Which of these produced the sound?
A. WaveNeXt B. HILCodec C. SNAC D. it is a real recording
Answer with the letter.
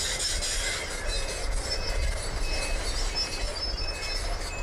D